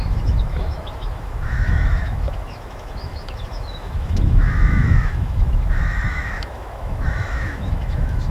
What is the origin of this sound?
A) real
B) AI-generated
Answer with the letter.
B